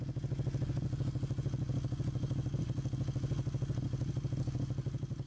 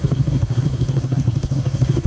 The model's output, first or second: second